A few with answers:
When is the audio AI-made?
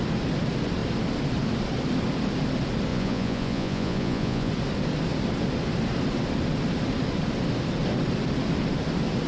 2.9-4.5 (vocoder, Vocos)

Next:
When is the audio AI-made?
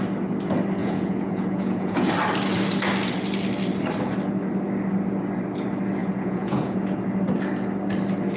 0.8-2.1 (vocoder, Vocos); 6.0-7.0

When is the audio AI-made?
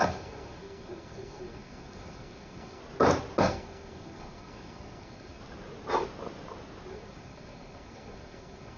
0.0-2.8 (codec, SNAC); 3.4-5.4; 6.9-8.8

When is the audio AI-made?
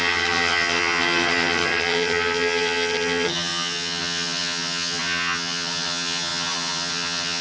0.0-7.4 (vocoder, HiFi-GAN)